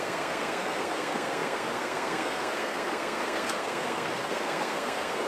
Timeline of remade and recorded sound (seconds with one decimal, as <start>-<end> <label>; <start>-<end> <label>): 0.0-5.3 remade